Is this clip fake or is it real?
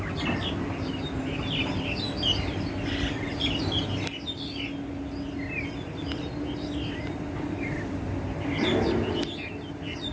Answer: real